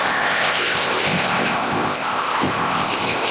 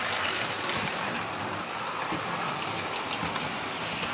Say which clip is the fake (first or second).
first